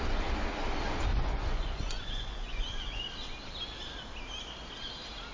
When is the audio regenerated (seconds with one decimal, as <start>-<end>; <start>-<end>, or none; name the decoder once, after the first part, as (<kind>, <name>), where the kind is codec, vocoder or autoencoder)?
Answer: 1.1-3.0 (vocoder, Vocos)